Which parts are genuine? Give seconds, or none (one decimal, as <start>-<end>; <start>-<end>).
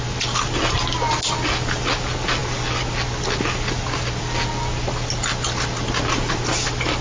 0.0-7.0